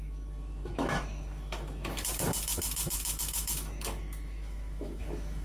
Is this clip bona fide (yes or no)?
no